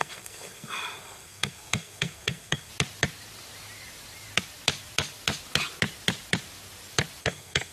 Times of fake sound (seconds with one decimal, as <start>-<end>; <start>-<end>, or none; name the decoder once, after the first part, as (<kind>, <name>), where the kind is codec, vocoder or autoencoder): 0.0-2.7 (codec, SNAC); 7.2-7.7